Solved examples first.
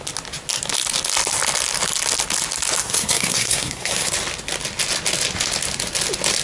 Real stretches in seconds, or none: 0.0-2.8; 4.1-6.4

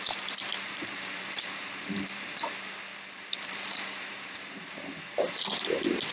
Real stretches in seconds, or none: 0.0-0.5; 2.5-2.9; 4.7-6.1

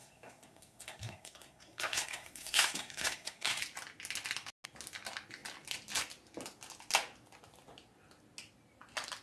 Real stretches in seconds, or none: 3.6-9.2

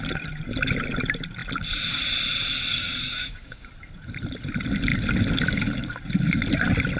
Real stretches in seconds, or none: 0.0-2.7; 3.7-7.0